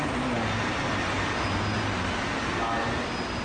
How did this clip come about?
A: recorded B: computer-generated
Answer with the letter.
A